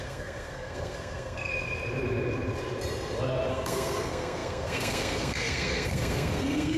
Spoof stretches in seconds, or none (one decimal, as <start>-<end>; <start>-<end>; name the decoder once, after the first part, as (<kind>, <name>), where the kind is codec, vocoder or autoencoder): 0.0-1.5 (codec, SNAC); 3.5-6.8